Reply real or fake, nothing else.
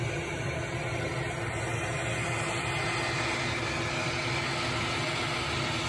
real